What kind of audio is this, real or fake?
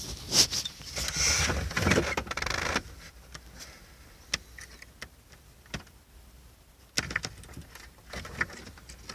real